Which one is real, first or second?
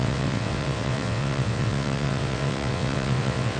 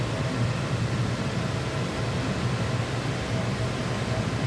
second